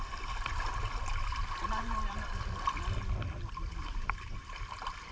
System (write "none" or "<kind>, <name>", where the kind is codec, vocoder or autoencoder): vocoder, BigVGAN v2